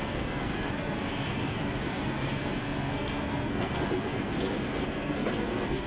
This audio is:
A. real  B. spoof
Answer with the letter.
B